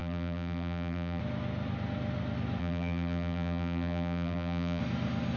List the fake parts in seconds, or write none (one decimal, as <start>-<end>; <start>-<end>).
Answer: 0.0-1.2; 2.6-4.8